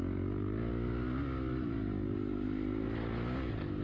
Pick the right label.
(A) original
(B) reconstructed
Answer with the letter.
A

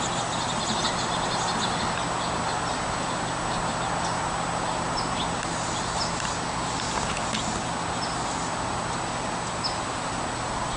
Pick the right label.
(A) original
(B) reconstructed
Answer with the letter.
A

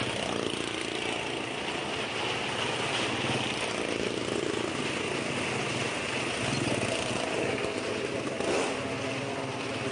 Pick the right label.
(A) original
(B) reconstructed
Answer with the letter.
A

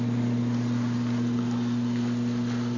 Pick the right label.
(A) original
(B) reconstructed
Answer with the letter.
A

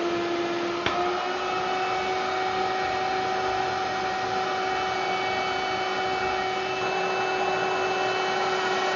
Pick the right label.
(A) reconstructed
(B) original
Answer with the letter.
B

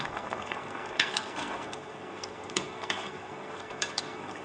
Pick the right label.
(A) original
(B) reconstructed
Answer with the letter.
B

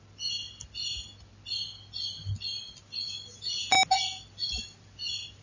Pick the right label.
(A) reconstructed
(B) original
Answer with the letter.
B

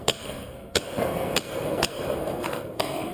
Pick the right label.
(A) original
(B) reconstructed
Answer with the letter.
B